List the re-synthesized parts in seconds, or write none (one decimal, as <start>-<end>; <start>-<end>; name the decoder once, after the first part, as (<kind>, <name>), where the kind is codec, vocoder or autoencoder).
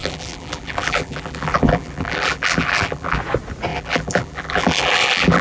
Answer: 0.0-3.2 (vocoder, BigVGAN v2); 3.7-5.4